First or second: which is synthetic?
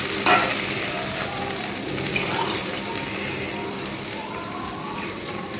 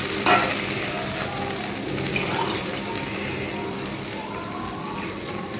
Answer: first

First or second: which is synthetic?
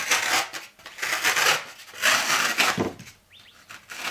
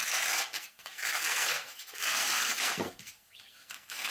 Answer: second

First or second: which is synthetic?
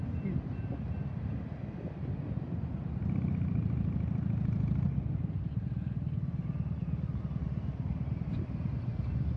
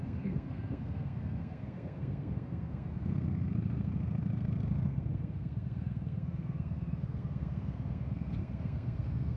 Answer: second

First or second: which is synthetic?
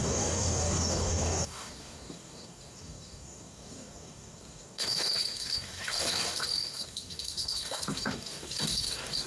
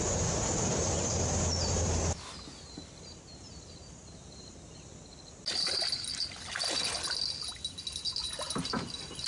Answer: first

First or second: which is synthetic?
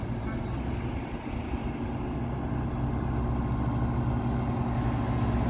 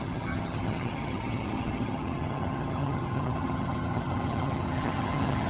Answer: second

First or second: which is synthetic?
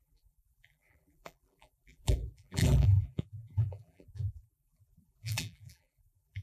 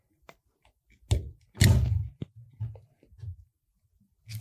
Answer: first